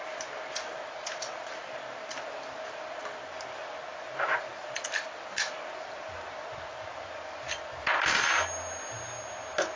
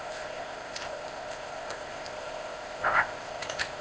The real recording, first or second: first